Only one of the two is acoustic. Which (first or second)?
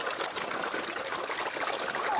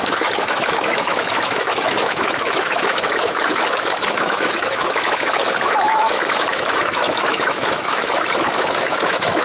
first